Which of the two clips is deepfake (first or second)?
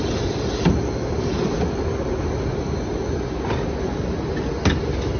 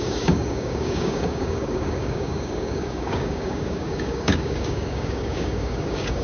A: second